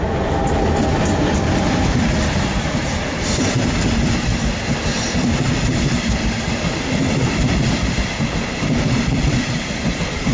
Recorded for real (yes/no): no